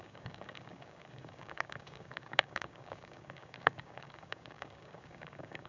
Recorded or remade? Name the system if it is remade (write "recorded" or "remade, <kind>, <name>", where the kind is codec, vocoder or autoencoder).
remade, codec, DAC